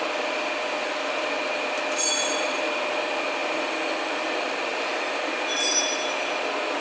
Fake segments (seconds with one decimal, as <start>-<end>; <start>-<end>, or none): none